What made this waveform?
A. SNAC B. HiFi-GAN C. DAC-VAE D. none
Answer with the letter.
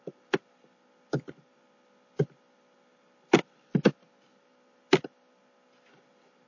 D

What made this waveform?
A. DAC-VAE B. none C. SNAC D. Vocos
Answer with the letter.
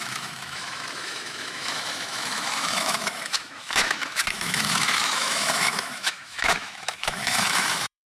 A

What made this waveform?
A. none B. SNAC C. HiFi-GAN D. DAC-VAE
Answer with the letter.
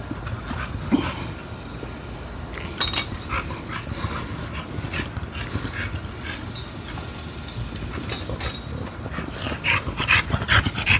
A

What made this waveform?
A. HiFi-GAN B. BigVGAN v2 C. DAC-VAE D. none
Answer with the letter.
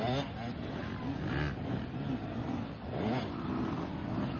D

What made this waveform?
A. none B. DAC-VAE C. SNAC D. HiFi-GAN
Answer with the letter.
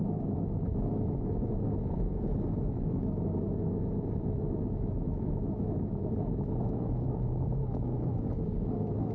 B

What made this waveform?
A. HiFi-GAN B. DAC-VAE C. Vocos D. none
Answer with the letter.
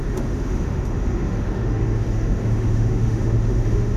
B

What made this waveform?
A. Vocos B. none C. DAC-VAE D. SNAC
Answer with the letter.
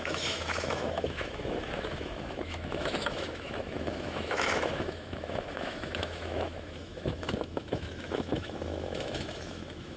C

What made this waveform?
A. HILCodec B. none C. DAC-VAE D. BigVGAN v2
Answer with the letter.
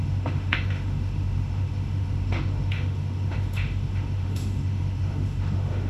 C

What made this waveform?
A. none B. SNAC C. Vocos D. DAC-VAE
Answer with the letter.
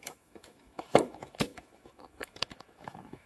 D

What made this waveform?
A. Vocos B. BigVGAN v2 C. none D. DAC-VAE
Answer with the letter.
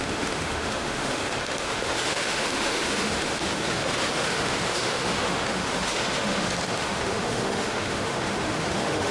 D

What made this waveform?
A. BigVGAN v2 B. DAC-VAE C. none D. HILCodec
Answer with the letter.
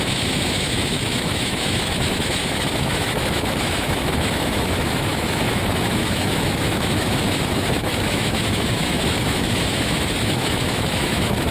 B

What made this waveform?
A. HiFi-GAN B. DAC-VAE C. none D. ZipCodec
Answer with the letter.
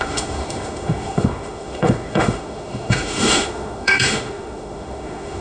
B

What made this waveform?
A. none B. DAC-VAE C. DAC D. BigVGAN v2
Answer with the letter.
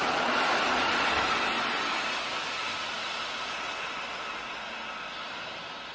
A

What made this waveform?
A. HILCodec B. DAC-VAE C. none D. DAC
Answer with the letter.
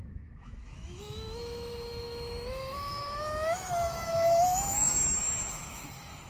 B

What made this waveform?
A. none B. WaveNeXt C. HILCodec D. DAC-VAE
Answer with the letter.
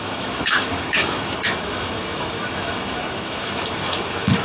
D